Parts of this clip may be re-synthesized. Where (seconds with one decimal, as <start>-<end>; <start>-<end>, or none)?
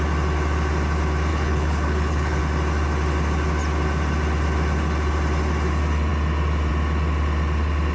1.3-2.4